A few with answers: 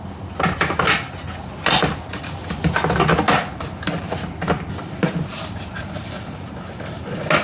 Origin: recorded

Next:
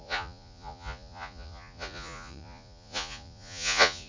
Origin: remade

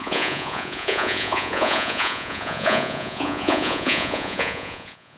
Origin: remade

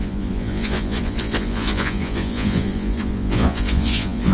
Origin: remade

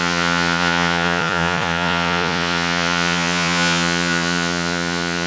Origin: remade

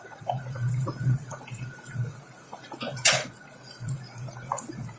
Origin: remade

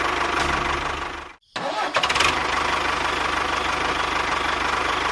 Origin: recorded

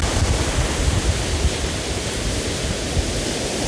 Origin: recorded